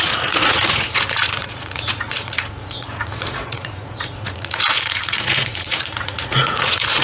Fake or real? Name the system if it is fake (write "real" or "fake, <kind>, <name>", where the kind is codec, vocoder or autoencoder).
fake, vocoder, Vocos